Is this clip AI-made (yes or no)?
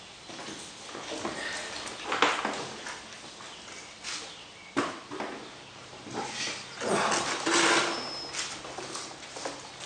no